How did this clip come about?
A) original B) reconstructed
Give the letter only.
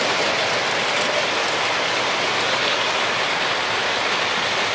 A